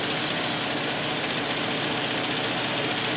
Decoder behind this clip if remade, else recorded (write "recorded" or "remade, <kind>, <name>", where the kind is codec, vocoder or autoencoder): recorded